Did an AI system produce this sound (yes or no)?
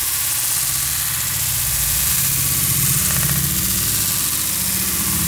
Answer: no